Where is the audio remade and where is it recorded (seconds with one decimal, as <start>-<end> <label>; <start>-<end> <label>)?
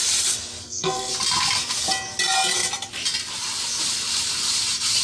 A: 0.0-0.6 recorded; 0.6-1.1 remade; 1.1-5.0 recorded